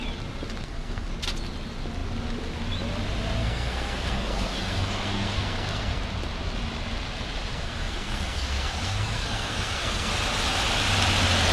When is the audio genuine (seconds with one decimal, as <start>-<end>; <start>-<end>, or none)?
0.0-0.6; 1.1-3.4; 6.0-7.5; 10.1-11.5